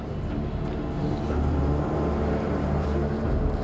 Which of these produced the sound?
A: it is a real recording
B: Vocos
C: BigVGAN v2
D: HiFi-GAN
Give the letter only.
A